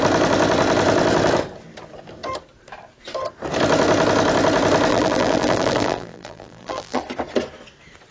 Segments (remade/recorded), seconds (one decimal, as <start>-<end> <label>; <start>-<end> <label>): 0.0-4.9 recorded; 4.9-7.0 remade; 7.0-8.1 recorded